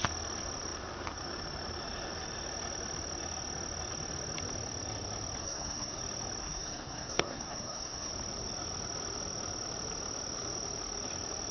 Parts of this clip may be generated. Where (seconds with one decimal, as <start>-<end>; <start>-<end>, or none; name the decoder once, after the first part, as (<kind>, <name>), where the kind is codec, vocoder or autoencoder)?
5.4-6.0 (codec, SNAC); 6.4-8.1